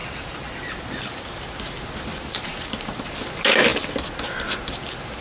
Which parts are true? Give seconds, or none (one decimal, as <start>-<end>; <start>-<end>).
0.8-2.1; 3.1-5.2